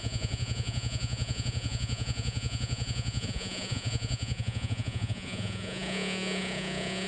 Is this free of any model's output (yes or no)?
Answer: no